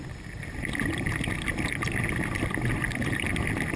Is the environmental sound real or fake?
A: real